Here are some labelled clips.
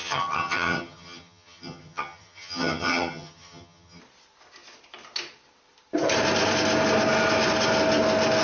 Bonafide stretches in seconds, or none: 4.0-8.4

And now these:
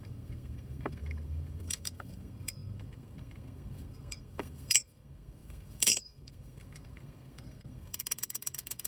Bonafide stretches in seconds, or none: none

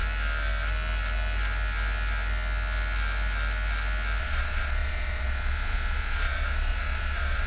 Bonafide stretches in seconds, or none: 0.0-4.2

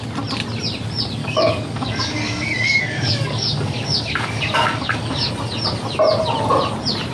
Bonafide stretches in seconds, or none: 0.0-1.2; 5.3-7.1

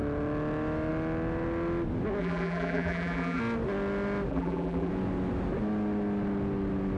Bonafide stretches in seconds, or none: 0.0-2.2; 3.4-4.3; 4.9-7.0

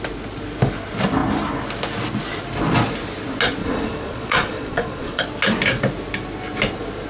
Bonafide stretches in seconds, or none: 0.0-3.6; 5.2-7.1

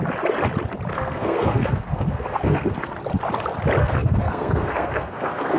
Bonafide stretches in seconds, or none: 0.0-0.9; 3.0-3.8